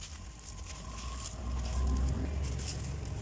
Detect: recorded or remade recorded